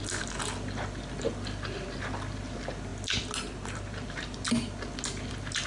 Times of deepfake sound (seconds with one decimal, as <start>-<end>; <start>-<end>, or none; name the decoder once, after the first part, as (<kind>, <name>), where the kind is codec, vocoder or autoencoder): none